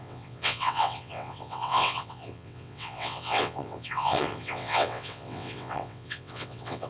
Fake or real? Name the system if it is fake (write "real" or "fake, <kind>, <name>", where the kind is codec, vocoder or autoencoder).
fake, vocoder, WaveNeXt